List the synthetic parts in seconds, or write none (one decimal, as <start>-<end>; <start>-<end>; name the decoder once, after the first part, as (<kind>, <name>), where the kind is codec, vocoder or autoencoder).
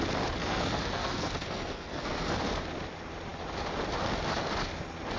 0.4-2.3 (codec, SNAC)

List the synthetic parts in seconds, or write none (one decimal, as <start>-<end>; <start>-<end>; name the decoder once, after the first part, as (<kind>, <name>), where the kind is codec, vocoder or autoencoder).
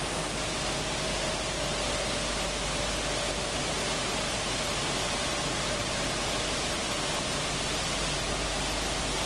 none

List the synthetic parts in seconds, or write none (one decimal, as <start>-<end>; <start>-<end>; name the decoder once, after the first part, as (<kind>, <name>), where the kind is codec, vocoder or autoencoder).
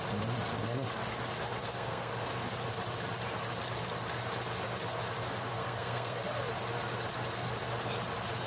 1.6-2.1 (codec, SNAC); 5.6-6.2